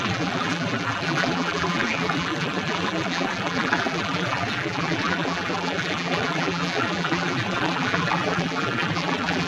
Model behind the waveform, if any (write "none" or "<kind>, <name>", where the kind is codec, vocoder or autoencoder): vocoder, BigVGAN v2